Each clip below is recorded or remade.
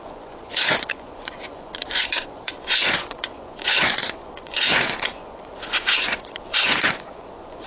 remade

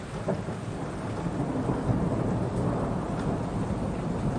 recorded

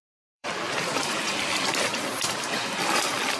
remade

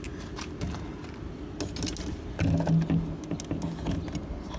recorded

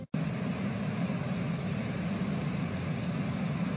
recorded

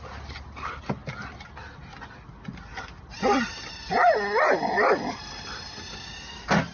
recorded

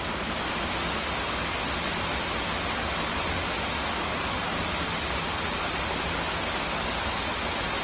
recorded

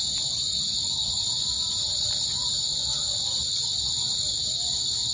recorded